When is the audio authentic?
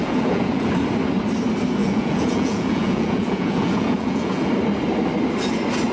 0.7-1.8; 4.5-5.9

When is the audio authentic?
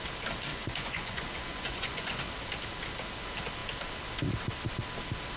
0.0-0.5; 2.2-5.4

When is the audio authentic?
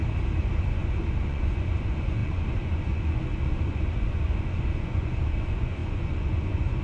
0.0-0.6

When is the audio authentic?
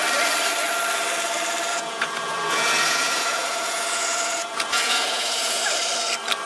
0.0-1.7; 5.6-6.5